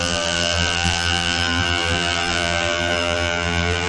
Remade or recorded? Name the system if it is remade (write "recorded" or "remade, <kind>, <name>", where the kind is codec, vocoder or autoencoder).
remade, vocoder, BigVGAN v2